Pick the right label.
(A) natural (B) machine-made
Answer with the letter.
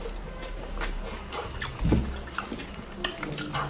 A